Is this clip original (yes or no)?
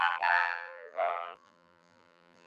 no